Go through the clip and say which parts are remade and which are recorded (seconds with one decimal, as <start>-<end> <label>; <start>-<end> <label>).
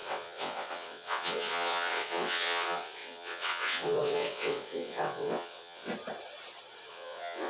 0.0-5.9 remade; 5.9-6.9 recorded; 6.9-7.5 remade